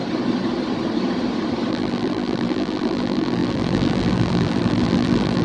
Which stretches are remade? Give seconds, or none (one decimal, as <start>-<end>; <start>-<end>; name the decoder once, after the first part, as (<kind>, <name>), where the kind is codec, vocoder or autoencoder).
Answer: 1.7-5.4 (vocoder, BigVGAN v2)